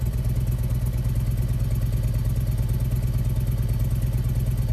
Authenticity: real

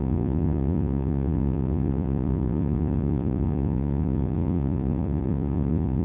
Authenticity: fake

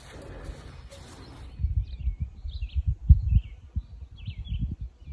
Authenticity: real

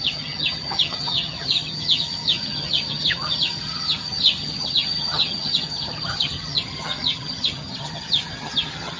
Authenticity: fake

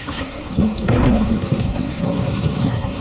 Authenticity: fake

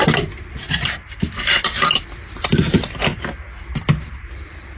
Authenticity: fake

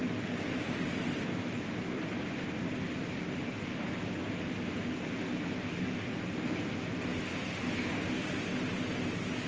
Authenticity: real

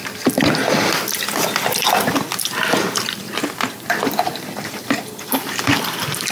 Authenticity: fake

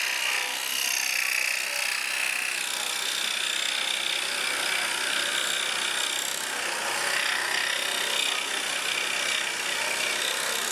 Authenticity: real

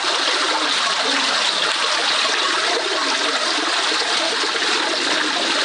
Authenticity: real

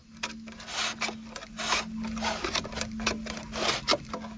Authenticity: real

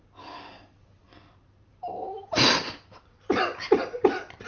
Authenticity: real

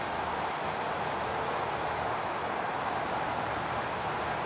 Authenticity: real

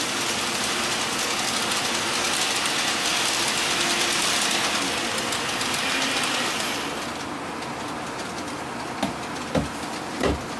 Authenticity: real